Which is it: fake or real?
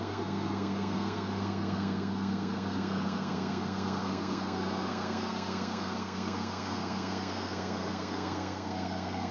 fake